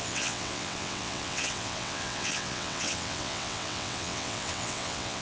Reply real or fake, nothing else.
fake